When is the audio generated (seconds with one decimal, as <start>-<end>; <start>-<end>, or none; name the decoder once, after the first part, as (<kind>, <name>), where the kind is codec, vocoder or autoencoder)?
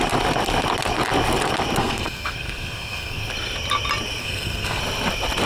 1.8-3.3 (codec, SNAC); 4.2-4.8